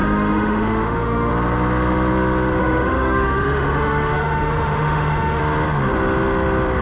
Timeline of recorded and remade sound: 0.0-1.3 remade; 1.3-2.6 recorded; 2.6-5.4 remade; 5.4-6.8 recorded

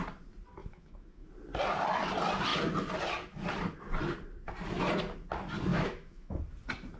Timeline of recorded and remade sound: 0.0-0.6 recorded; 0.6-1.3 remade; 1.3-5.7 recorded; 5.7-6.4 remade; 6.4-7.0 recorded

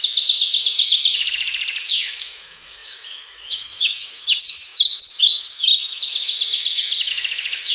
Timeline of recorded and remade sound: 0.0-7.7 remade

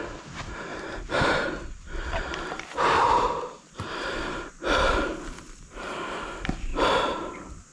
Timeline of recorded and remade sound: 0.0-0.7 recorded; 0.7-4.5 remade; 4.5-6.7 recorded; 6.7-7.3 remade; 7.3-7.7 recorded

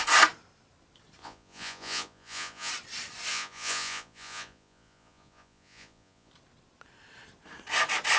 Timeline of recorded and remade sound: 0.0-1.2 recorded; 1.2-2.7 remade; 2.7-3.3 recorded; 3.3-6.3 remade; 6.3-8.2 recorded